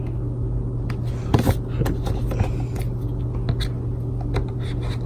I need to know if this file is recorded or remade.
recorded